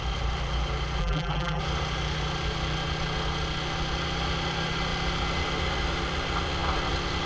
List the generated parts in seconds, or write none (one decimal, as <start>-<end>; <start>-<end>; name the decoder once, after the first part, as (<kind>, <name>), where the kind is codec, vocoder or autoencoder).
1.0-1.6 (vocoder, BigVGAN v2)